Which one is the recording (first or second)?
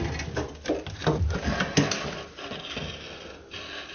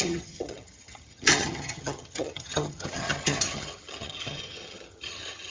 first